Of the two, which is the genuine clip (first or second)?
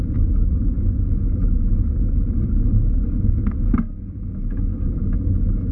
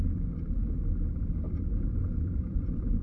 first